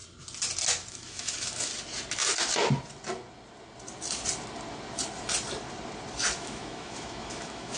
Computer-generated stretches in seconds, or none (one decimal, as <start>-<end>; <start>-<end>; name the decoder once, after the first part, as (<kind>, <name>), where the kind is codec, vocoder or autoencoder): 0.9-1.7 (autoencoder, DAC-VAE); 6.4-7.8